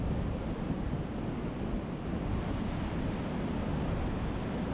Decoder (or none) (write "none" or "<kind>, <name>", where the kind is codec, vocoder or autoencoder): none